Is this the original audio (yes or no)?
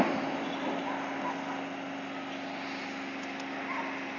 yes